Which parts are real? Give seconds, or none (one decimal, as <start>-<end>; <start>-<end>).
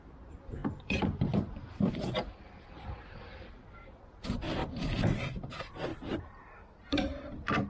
0.0-0.6; 3.5-4.6; 5.5-5.9